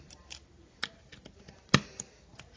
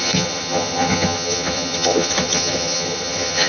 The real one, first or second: first